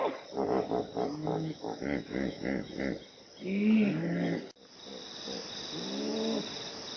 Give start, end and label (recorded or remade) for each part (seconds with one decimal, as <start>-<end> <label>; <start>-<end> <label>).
0.0-1.2 recorded; 1.2-2.8 remade; 2.8-7.0 recorded